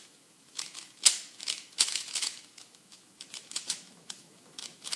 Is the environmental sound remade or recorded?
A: remade